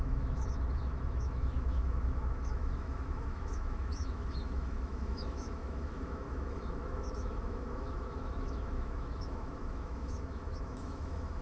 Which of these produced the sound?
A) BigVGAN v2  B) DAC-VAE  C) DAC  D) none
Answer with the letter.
B